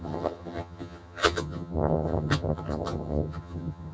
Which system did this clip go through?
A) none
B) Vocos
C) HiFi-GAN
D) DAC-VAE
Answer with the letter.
C